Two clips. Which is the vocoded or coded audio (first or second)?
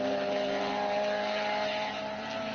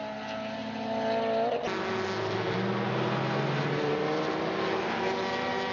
first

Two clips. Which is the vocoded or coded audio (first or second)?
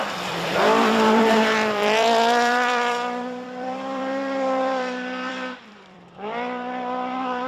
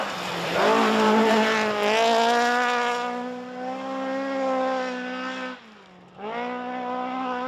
first